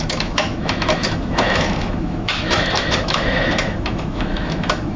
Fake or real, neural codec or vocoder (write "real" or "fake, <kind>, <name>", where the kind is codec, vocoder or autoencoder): fake, autoencoder, DAC-VAE